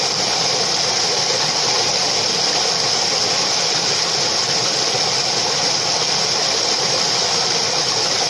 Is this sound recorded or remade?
recorded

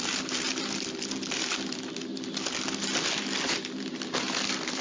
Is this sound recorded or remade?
recorded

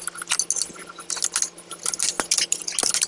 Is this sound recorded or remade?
recorded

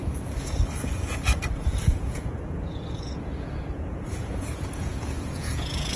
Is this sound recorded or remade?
remade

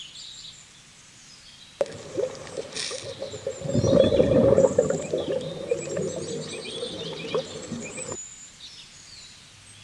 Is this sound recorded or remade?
recorded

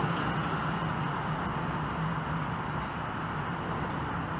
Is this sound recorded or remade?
recorded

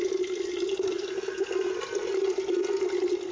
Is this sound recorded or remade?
recorded